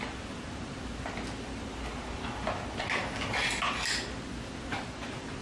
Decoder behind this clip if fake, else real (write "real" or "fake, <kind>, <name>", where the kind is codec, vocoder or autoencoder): real